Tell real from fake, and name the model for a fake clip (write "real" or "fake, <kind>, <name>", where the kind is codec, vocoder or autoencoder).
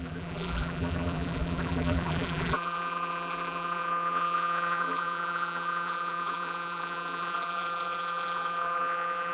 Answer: fake, vocoder, BigVGAN v2